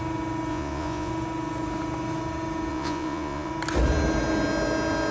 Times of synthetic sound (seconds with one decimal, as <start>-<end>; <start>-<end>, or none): 0.5-1.1; 2.7-3.5